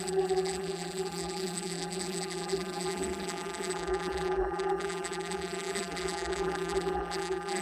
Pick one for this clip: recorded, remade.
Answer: remade